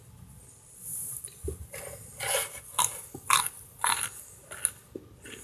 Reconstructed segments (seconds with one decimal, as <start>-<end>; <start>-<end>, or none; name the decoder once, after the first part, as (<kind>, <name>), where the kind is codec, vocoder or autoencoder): none